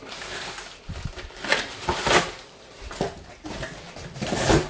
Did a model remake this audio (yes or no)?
no